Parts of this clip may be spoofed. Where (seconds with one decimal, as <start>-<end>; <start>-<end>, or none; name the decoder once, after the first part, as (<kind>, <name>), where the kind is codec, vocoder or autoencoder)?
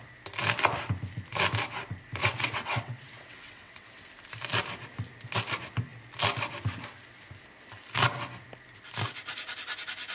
2.2-4.1 (vocoder, WaveNeXt)